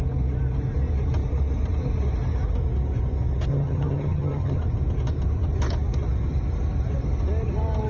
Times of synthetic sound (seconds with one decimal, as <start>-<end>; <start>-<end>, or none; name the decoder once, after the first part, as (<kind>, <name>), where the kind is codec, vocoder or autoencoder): 3.5-4.6 (vocoder, HiFi-GAN)